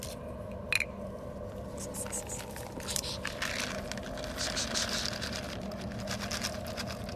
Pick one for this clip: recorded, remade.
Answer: recorded